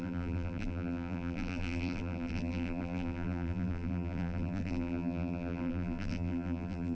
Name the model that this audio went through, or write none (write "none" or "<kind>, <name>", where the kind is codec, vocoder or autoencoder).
vocoder, BigVGAN v2